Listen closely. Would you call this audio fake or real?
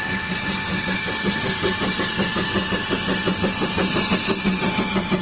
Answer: real